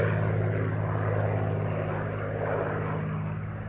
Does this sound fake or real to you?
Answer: real